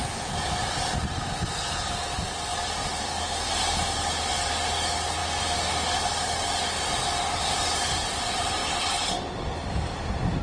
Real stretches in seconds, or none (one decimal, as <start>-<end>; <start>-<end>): 0.0-10.4